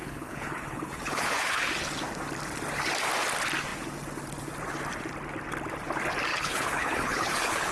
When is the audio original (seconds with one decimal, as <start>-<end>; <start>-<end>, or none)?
1.7-6.3